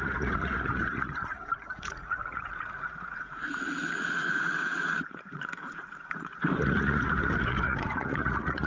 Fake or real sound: fake